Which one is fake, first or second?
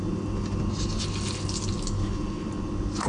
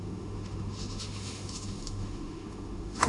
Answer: second